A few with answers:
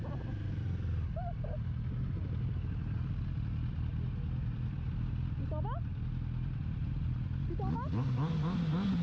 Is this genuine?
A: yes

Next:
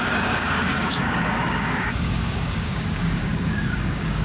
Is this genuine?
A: no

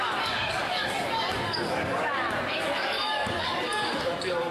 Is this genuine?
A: no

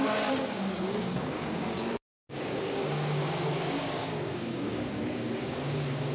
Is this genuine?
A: no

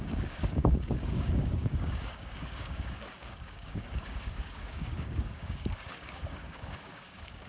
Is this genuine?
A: no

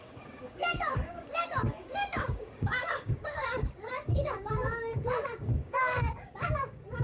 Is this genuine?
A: no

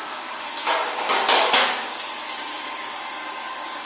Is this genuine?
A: no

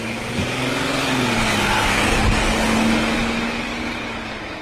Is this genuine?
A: no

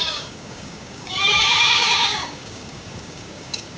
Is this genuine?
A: no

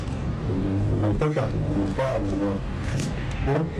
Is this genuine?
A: no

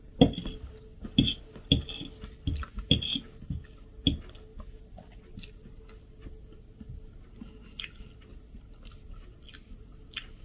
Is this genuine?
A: yes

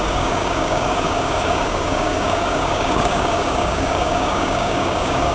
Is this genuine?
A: no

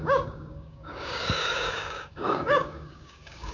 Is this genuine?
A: no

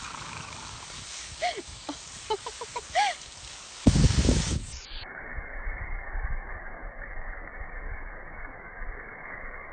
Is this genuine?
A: no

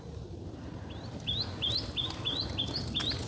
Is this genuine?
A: yes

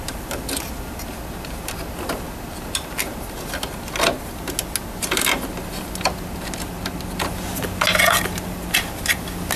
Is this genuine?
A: yes